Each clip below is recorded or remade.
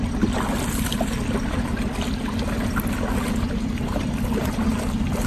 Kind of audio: recorded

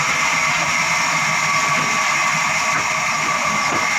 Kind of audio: recorded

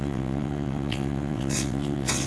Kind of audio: remade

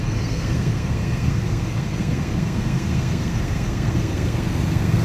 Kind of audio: remade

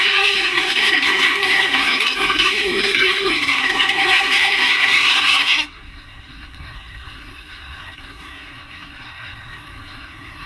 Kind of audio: remade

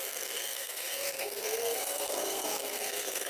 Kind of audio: remade